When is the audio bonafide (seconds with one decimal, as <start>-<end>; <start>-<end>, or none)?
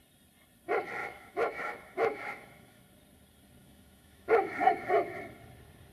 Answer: 0.0-1.0; 2.8-3.6; 5.2-5.9